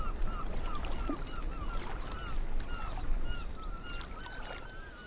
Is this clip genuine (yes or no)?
yes